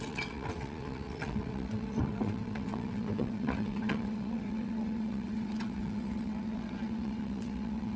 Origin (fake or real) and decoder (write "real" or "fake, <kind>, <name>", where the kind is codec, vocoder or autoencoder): fake, vocoder, WaveNeXt